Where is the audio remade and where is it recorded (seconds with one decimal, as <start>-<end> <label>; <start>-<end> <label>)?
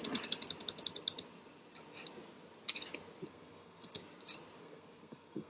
0.0-3.3 recorded; 3.3-4.0 remade; 4.0-4.6 recorded; 4.6-5.5 remade